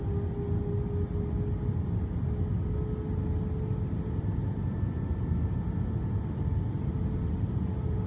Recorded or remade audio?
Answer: recorded